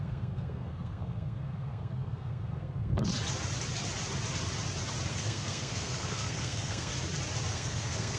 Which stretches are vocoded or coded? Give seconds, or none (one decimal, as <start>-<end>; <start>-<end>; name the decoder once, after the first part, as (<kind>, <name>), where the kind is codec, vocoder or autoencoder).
0.0-3.1 (codec, SNAC); 5.1-6.9; 7.5-8.2